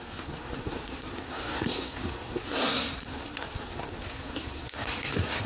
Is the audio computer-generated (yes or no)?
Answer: yes